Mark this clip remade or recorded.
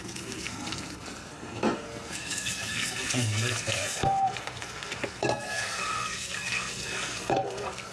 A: remade